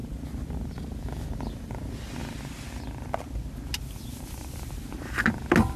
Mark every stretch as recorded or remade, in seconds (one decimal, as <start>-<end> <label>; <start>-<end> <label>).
0.0-5.8 recorded